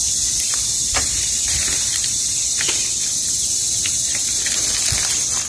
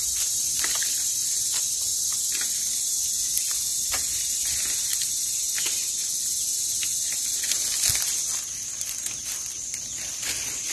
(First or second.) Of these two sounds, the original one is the second